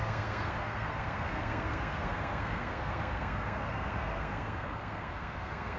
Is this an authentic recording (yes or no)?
no